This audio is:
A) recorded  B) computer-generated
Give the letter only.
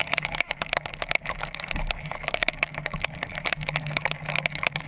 B